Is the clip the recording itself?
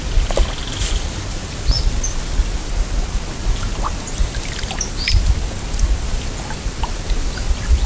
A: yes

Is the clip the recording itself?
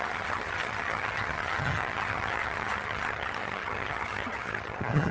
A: no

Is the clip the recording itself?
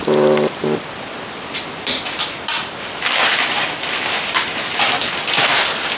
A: no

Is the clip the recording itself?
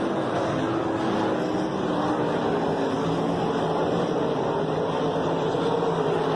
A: yes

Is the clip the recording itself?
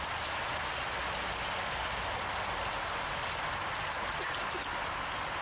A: yes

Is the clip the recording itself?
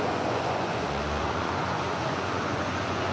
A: no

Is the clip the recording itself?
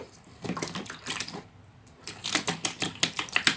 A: yes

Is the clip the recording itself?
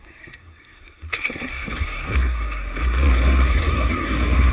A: no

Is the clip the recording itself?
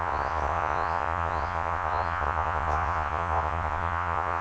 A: no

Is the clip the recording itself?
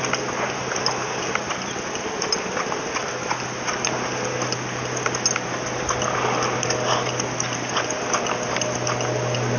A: yes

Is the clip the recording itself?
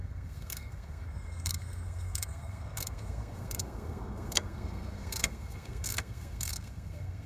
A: no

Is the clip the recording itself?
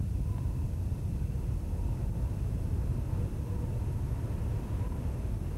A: yes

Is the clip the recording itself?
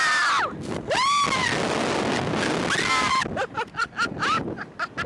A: yes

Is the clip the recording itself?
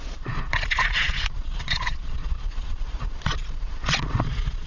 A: no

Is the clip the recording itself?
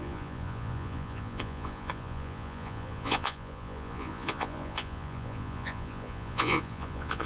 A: no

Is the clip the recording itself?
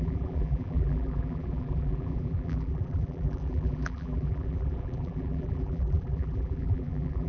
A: no